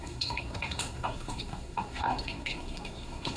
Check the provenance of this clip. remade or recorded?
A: remade